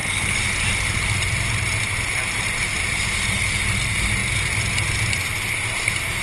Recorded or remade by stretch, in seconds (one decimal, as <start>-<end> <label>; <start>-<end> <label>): 0.0-2.2 remade; 2.2-2.7 recorded; 2.7-3.4 remade; 3.4-4.2 recorded; 4.2-5.3 remade; 5.3-6.2 recorded